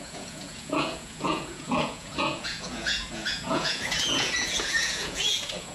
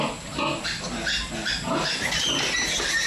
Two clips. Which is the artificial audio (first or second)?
first